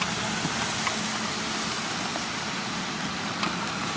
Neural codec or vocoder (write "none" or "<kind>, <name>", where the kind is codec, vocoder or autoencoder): none